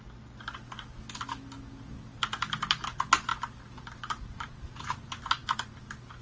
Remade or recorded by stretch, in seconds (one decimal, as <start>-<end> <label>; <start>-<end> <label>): 0.0-6.2 recorded